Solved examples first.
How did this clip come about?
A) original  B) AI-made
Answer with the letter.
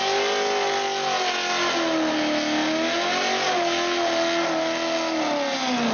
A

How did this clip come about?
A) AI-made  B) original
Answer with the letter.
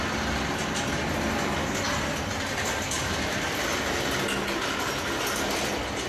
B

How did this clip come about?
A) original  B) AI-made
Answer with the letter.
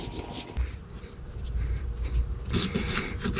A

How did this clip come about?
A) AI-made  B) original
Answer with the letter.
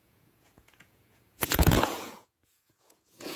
A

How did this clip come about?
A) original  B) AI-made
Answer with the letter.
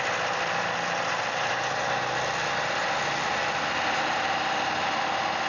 A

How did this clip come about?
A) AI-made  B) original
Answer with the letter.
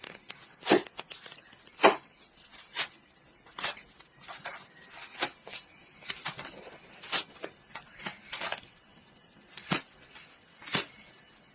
B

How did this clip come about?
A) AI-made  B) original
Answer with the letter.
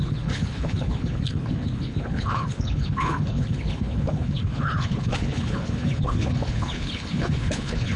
A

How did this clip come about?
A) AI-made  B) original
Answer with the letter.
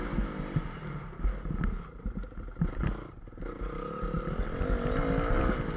B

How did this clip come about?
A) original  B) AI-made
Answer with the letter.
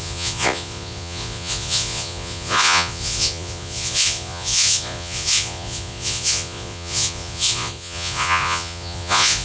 B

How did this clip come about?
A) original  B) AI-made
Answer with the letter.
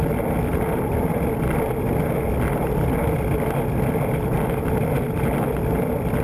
A